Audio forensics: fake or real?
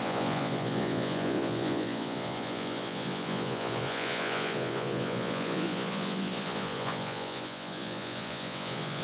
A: fake